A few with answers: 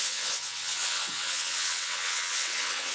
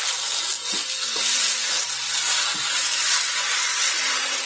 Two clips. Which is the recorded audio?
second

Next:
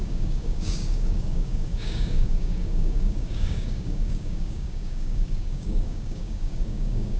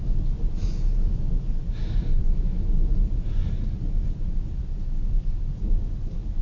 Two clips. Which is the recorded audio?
second